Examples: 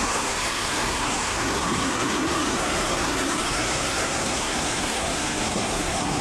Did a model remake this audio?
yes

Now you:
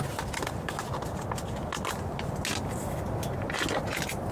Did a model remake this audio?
no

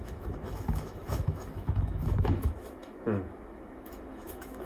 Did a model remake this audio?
yes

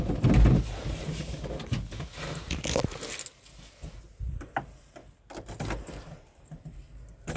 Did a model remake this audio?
no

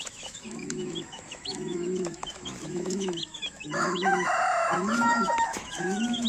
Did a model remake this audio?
yes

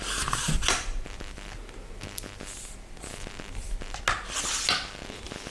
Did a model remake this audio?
no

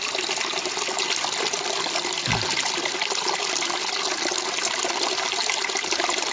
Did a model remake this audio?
no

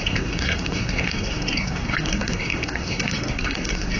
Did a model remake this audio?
yes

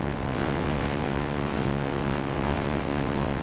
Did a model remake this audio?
yes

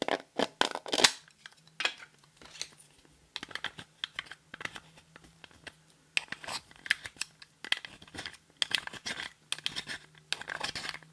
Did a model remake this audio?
no